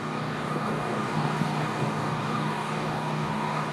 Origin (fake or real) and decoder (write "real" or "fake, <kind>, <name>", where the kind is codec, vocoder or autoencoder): fake, codec, DAC